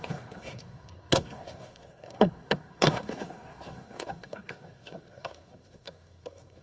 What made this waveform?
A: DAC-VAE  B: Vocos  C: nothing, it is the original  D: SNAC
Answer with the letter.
D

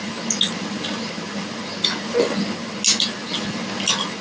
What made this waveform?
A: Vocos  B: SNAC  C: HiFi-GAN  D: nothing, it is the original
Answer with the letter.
D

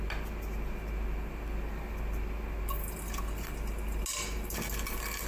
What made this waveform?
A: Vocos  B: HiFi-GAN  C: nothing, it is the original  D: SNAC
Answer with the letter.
C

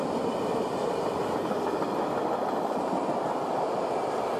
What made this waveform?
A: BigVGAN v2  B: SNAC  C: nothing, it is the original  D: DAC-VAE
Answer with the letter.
C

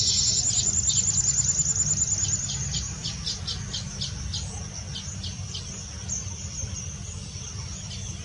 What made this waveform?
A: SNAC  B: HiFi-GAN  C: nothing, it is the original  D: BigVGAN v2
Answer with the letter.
C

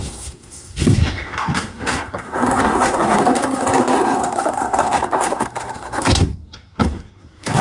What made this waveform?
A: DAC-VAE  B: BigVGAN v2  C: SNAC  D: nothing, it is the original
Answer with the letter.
C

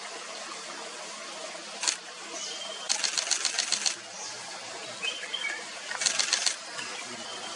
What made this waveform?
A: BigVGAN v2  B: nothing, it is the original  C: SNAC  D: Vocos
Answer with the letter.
B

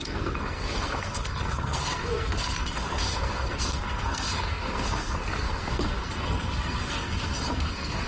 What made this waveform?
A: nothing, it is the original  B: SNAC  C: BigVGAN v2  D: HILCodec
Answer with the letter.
B